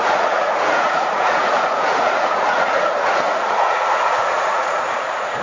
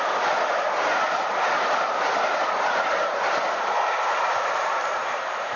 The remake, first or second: first